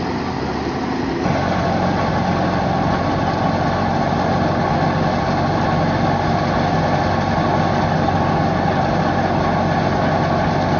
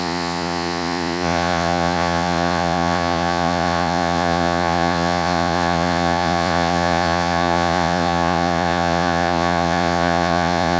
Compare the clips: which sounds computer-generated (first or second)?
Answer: second